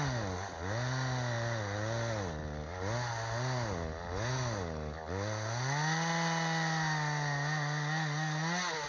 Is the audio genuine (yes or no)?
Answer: yes